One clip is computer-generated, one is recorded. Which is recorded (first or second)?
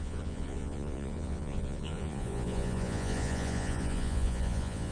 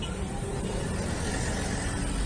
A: second